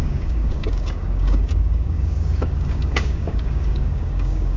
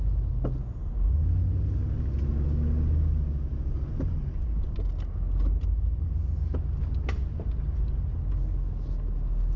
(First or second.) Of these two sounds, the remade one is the first